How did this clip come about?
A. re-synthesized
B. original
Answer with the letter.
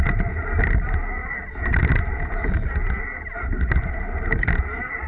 B